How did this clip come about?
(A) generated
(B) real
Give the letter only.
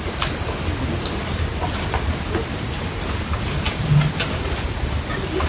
B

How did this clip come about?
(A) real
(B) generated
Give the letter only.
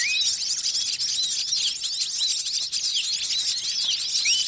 A